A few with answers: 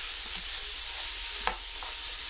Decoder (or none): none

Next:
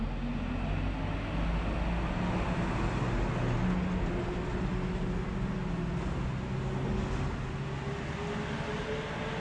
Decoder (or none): none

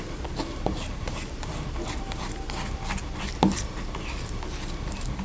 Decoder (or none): none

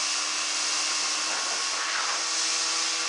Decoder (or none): none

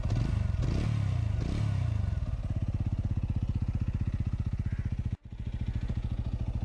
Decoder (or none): none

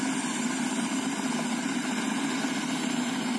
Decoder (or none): none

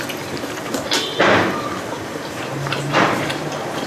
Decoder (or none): vocoder, BigVGAN v2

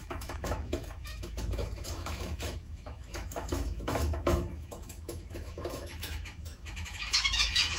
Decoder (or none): autoencoder, DAC-VAE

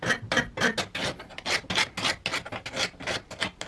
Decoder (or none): none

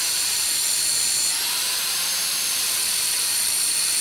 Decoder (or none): vocoder, BigVGAN v2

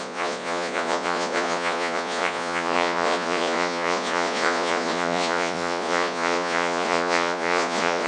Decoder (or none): vocoder, Vocos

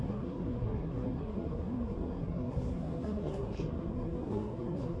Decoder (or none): codec, SNAC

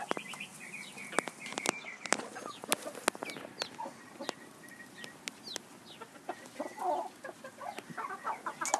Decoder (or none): none